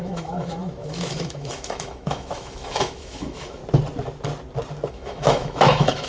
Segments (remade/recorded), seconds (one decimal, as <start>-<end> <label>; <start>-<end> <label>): 0.0-3.6 remade; 3.6-4.9 recorded; 4.9-6.1 remade